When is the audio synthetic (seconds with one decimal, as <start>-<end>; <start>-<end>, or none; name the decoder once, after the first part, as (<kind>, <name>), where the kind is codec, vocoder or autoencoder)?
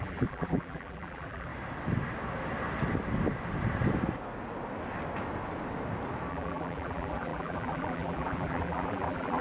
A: 0.0-1.5 (vocoder, BigVGAN v2); 6.3-9.4